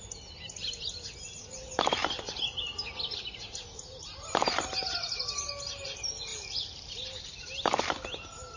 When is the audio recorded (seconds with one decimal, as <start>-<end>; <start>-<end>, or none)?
0.0-8.6